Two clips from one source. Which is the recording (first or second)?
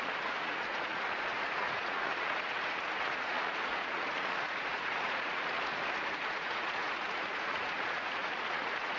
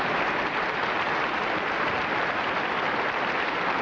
second